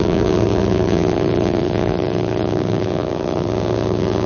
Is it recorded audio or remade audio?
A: remade